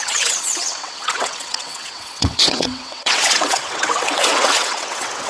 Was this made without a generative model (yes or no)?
no